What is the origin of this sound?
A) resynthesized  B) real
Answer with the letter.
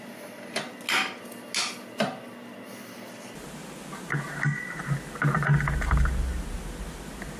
B